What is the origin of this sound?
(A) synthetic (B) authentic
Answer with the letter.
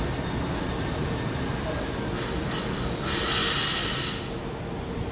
B